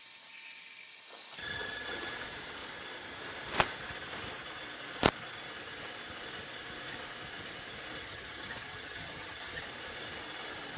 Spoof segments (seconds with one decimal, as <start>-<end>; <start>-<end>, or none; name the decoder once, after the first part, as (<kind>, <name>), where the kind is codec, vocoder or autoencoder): 1.4-2.1 (vocoder, HiFi-GAN); 8.0-9.6